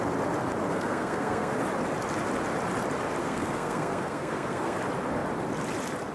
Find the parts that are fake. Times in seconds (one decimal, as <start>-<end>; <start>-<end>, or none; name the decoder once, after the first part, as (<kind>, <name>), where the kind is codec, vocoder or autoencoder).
0.7-1.6 (codec, SNAC); 3.2-4.8